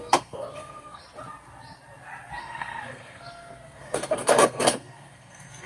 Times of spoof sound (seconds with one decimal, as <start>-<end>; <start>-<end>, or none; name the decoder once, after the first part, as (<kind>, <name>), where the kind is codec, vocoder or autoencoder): 0.0-1.0 (codec, SNAC); 2.4-5.7